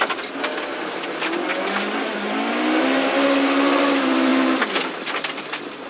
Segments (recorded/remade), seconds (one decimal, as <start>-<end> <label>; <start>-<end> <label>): 0.0-5.9 recorded